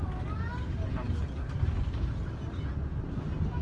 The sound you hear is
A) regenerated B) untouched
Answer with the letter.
B